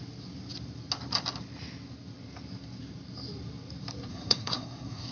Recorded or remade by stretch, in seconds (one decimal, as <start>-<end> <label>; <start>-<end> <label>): 0.0-4.1 recorded; 4.1-5.1 remade